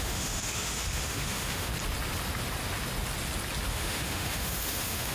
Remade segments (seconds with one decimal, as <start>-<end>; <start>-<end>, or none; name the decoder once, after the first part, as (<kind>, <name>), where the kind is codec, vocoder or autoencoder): 0.0-1.7 (autoencoder, DAC-VAE); 3.7-5.1